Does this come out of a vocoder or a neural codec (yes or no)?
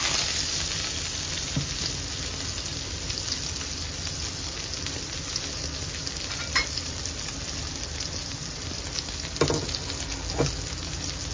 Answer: no